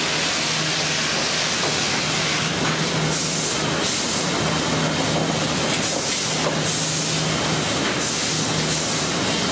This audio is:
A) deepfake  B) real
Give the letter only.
B